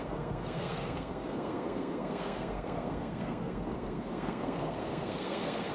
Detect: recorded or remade remade